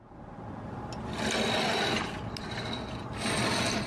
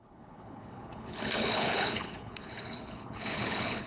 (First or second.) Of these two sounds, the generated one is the second